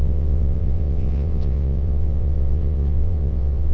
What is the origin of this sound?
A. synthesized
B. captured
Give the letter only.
A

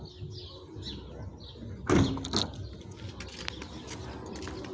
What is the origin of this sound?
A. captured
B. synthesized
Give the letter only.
A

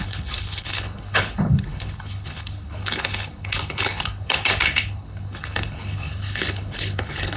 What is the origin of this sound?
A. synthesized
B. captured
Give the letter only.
A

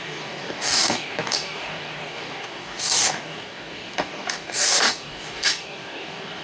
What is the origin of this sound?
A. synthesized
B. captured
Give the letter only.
A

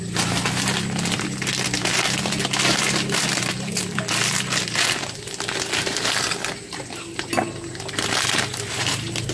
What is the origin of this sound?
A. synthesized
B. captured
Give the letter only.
B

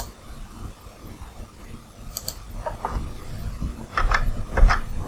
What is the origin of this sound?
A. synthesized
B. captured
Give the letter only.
B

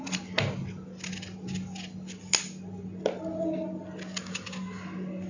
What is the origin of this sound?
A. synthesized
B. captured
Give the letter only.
B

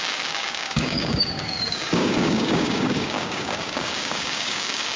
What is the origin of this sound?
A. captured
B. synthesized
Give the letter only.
B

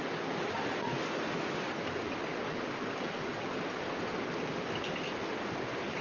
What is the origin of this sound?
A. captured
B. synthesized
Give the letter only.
A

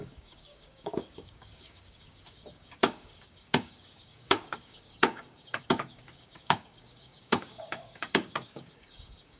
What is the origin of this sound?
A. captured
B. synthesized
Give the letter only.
B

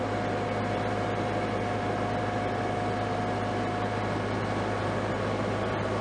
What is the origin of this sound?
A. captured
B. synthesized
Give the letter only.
A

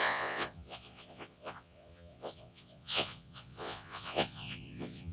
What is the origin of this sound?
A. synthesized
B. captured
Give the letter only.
A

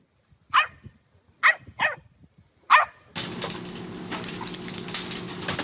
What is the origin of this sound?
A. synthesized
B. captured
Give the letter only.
B